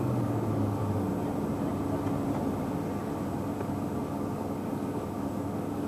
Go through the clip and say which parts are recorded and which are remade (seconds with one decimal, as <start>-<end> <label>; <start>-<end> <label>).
0.0-0.8 remade; 0.8-4.0 recorded; 4.0-5.9 remade